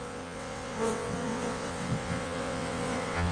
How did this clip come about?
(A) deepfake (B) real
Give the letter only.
A